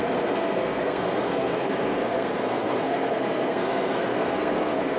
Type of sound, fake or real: fake